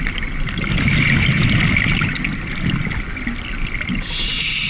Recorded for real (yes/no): yes